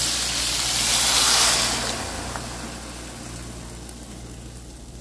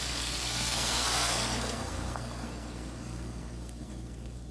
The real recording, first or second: first